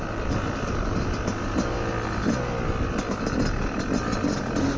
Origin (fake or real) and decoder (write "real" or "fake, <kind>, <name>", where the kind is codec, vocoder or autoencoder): real